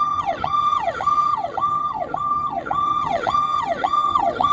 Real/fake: fake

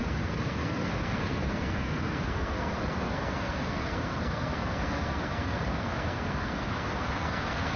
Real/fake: fake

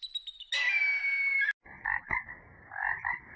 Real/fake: real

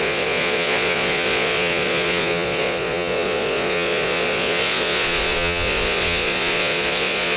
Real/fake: fake